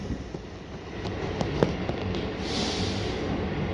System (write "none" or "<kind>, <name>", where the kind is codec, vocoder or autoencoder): none